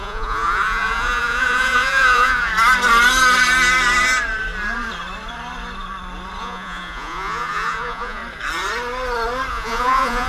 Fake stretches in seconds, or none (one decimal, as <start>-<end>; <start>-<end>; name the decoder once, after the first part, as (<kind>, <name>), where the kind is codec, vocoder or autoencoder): 0.0-2.5 (vocoder, Vocos); 6.4-8.2; 9.5-10.3